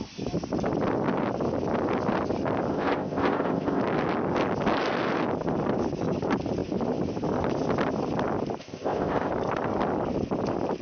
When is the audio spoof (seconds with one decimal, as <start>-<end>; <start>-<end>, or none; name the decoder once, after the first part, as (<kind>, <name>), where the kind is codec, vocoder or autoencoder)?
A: 2.7-3.8 (codec, ZipCodec); 8.6-9.3